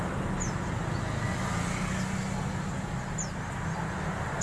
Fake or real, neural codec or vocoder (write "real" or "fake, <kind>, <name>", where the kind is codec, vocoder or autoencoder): real